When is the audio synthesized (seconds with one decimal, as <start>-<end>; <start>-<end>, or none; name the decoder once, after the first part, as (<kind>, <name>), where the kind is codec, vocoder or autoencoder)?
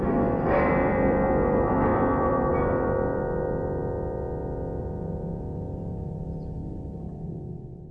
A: 0.0-3.8 (vocoder, BigVGAN v2); 4.8-7.9